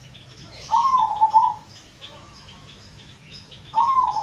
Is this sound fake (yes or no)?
yes